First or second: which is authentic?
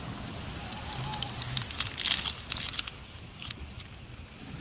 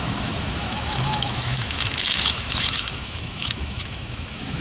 first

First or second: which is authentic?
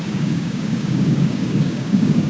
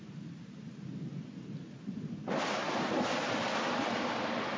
second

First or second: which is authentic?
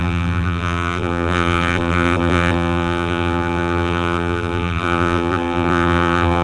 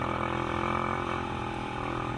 second